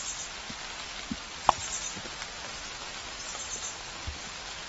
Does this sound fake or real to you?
real